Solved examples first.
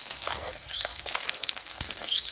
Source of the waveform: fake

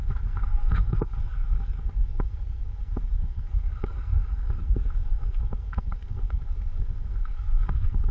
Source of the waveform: fake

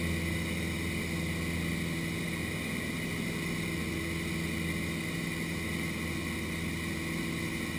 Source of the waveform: real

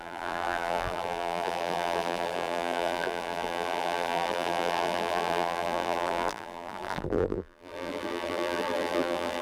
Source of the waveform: fake